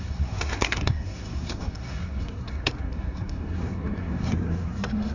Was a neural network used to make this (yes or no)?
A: yes